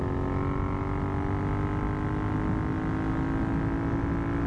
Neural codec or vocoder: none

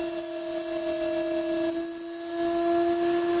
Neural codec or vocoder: none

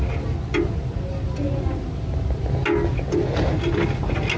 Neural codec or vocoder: none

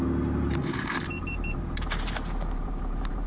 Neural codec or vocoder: vocoder, BigVGAN v2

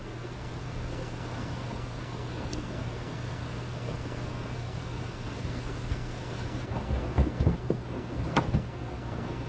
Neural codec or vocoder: codec, SNAC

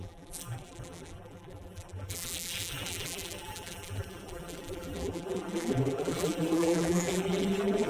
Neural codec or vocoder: vocoder, BigVGAN v2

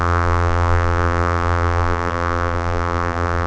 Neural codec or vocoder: vocoder, BigVGAN v2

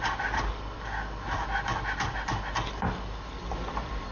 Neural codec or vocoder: none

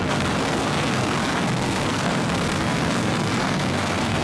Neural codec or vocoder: codec, SNAC